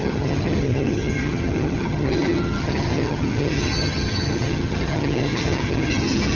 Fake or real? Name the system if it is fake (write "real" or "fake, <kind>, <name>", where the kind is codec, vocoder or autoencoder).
fake, vocoder, HiFi-GAN